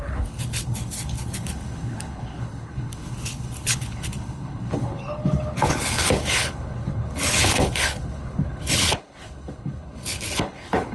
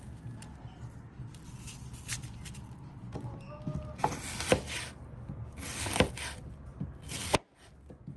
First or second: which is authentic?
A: second